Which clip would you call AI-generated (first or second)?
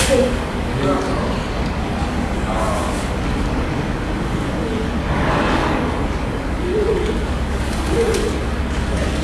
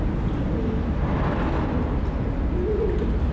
first